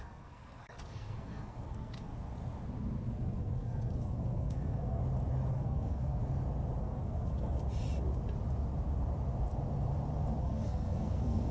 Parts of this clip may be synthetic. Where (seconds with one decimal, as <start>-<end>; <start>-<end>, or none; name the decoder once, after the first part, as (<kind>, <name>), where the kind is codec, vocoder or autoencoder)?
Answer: 0.0-2.1 (codec, SNAC); 3.1-5.0; 5.5-6.2; 6.8-7.6; 10.4-11.5